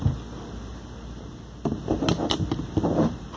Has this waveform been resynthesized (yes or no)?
no